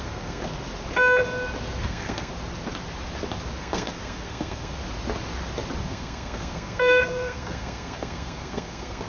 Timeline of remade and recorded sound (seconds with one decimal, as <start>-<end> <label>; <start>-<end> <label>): 0.0-0.4 remade; 0.4-1.8 recorded; 1.8-2.3 remade; 2.3-3.6 recorded; 3.6-4.8 remade; 4.8-5.8 recorded; 5.8-9.1 remade